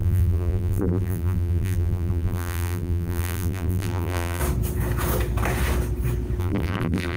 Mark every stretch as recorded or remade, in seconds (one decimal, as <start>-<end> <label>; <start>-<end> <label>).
0.0-4.4 remade; 4.4-6.4 recorded; 6.4-7.2 remade